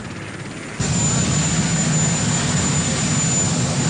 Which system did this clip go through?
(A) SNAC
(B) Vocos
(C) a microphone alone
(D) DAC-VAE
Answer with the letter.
C